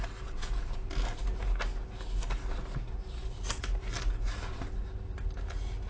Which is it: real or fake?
real